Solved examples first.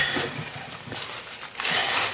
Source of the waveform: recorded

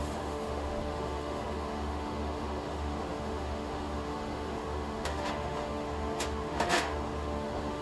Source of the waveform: remade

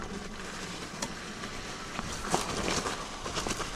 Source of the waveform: recorded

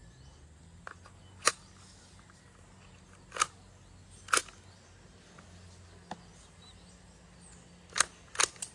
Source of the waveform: recorded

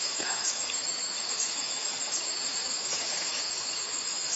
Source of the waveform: remade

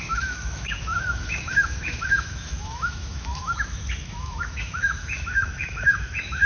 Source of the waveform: remade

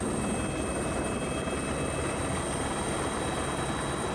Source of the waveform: recorded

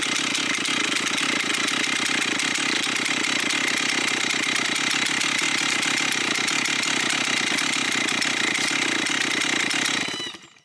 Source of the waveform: recorded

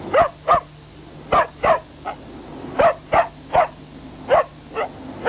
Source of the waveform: recorded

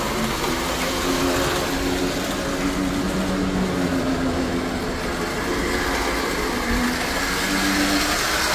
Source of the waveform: recorded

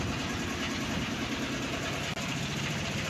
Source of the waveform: recorded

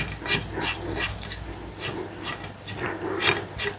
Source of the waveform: recorded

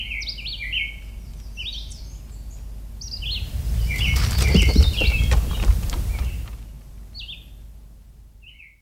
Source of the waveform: recorded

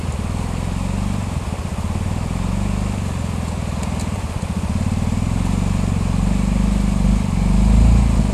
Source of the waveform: recorded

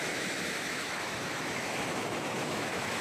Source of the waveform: remade